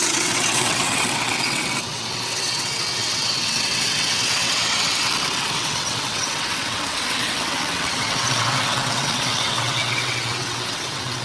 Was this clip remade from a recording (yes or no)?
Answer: yes